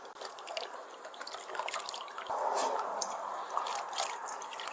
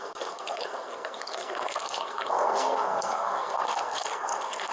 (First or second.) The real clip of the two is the first